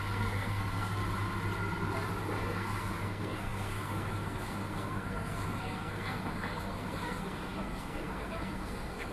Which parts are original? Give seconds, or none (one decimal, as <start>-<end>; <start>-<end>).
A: 1.0-2.4